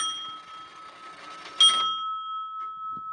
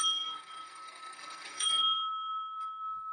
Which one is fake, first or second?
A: second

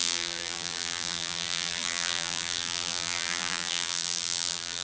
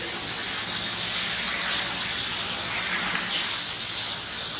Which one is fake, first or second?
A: first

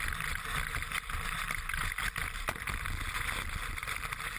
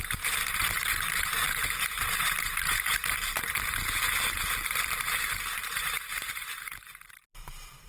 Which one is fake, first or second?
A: second